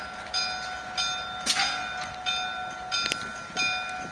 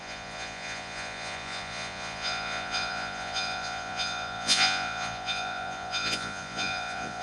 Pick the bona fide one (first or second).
first